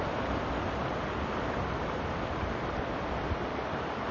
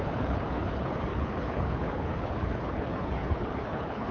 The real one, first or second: first